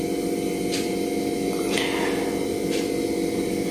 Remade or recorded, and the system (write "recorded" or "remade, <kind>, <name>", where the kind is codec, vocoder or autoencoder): recorded